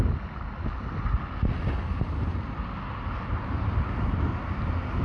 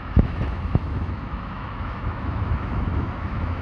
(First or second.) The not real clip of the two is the second